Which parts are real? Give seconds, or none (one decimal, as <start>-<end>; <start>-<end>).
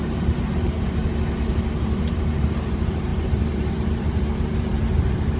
1.0-1.6